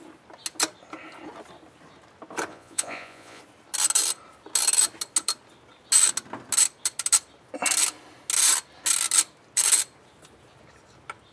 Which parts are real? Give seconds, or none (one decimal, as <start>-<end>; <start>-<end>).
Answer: 0.0-2.5; 3.4-11.3